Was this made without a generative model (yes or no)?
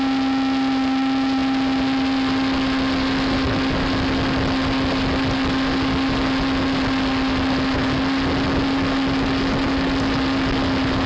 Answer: yes